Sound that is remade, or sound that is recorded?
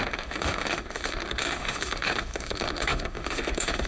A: remade